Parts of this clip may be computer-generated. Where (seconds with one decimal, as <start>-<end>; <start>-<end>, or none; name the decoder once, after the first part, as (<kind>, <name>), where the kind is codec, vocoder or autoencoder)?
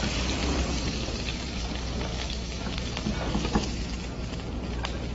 2.1-2.8 (autoencoder, DAC-VAE)